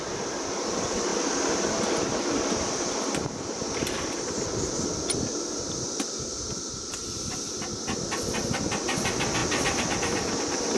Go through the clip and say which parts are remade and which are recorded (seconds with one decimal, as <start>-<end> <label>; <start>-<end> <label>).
0.0-10.8 recorded